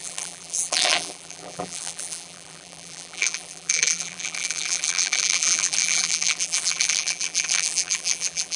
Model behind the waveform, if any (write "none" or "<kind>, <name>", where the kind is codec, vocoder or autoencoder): vocoder, BigVGAN v2